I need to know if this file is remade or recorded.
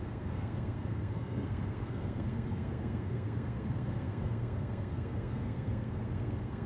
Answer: remade